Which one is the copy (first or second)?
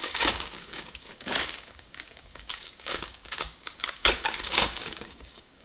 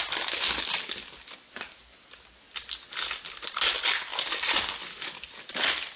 first